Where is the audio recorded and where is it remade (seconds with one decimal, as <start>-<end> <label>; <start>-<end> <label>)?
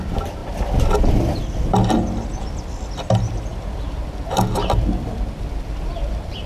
0.0-3.5 recorded; 3.5-5.5 remade; 5.5-6.5 recorded